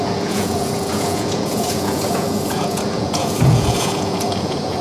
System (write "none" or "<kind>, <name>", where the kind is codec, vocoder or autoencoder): vocoder, Vocos